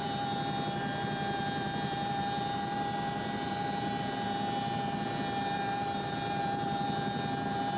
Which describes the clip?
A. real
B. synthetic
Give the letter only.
A